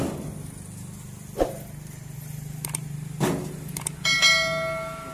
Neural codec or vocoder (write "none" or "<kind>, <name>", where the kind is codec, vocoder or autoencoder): none